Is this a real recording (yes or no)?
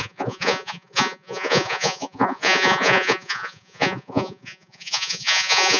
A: no